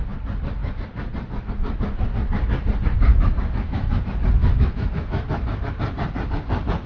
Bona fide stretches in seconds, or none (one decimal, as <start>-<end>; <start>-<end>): 0.0-3.1; 4.0-4.4; 5.7-6.9